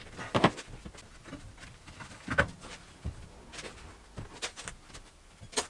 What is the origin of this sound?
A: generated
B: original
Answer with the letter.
B